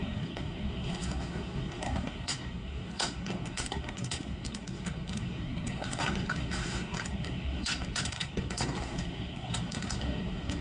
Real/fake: fake